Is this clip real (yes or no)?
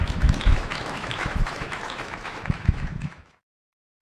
no